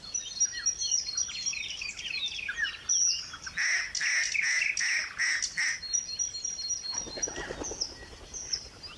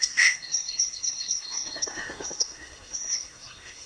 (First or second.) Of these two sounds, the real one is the first